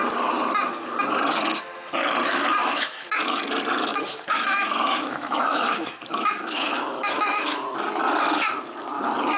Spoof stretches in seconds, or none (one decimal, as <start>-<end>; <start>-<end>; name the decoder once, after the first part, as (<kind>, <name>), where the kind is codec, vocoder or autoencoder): 2.6-3.4 (autoencoder, DAC-VAE); 3.9-7.6